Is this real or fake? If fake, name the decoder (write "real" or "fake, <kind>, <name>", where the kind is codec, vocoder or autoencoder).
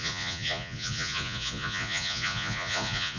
fake, vocoder, Vocos